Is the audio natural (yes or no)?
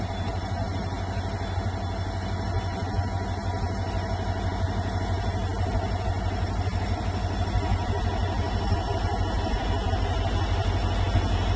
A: yes